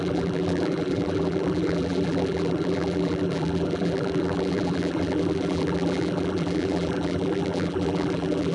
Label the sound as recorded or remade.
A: remade